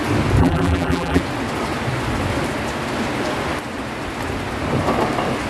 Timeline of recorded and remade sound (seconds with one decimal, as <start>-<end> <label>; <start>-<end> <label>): 0.0-0.4 recorded; 0.4-1.2 remade; 1.2-5.5 recorded